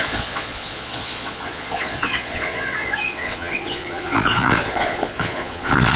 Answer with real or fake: fake